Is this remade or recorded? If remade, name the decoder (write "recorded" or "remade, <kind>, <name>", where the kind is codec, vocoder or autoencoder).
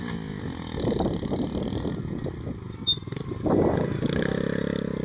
recorded